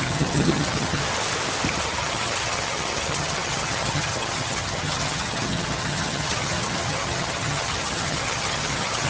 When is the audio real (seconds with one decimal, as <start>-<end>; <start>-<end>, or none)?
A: 1.0-1.7